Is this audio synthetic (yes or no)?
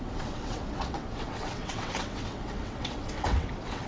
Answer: yes